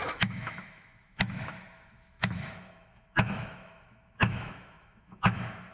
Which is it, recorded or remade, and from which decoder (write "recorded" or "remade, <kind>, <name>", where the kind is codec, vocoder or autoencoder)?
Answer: remade, autoencoder, DAC-VAE